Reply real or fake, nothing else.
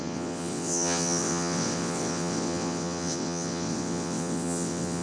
fake